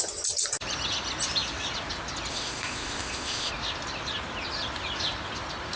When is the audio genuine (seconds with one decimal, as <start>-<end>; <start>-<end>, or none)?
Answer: 0.0-2.3; 3.5-5.8